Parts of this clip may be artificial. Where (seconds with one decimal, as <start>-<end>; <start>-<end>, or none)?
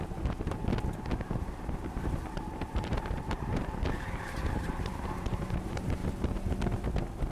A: 0.0-0.6; 1.5-6.0